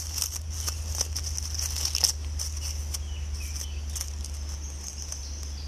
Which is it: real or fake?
real